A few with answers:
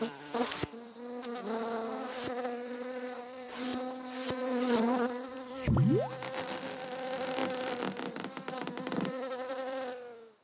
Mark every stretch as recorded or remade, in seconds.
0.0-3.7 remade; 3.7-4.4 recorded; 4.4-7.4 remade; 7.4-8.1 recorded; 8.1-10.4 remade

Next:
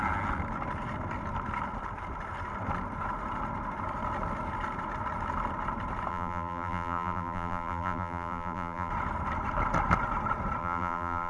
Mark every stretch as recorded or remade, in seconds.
0.0-6.1 recorded; 6.1-8.9 remade; 8.9-10.6 recorded; 10.6-11.3 remade

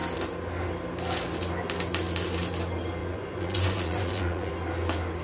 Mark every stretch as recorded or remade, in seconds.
0.0-3.0 recorded; 3.0-4.5 remade; 4.5-5.2 recorded

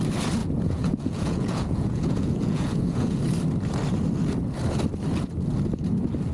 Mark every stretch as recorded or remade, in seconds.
0.0-0.4 recorded; 0.4-3.2 remade; 3.2-6.3 recorded